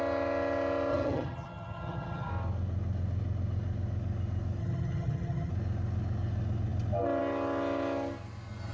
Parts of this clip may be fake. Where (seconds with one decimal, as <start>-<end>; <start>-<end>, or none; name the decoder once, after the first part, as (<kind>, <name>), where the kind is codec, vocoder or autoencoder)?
0.9-2.3 (vocoder, HiFi-GAN); 4.6-5.5